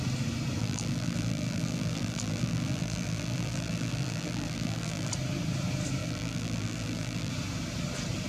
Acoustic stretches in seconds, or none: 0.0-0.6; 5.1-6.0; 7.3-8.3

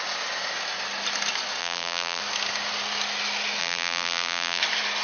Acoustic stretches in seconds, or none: 0.0-1.6; 2.2-3.6; 4.6-5.0

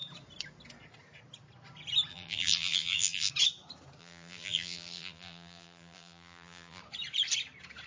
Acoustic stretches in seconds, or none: 0.0-2.1; 3.3-4.0; 6.8-7.9